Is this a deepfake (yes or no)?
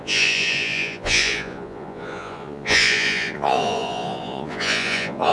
yes